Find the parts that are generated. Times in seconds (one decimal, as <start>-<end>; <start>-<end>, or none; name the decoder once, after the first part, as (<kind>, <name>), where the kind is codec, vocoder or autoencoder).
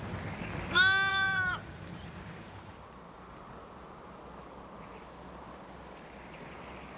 1.1-3.7 (vocoder, BigVGAN v2)